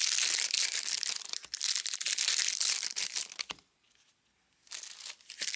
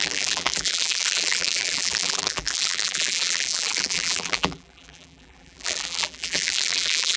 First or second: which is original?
first